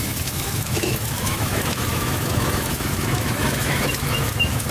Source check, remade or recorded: remade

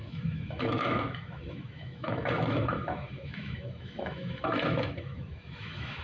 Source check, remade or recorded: remade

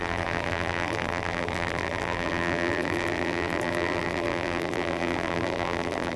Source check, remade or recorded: remade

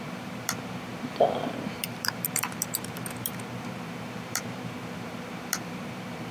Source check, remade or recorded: remade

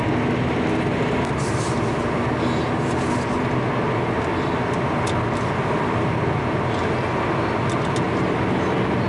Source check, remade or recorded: recorded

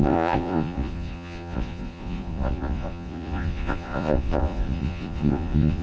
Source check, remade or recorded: remade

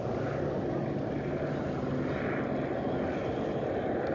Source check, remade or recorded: recorded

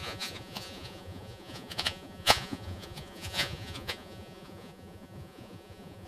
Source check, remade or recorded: remade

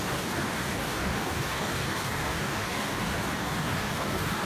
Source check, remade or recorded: remade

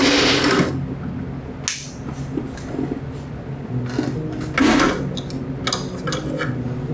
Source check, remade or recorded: recorded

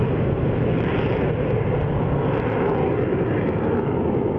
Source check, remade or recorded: recorded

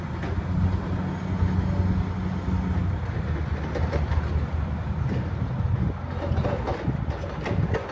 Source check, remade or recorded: recorded